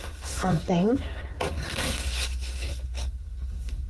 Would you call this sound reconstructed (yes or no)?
yes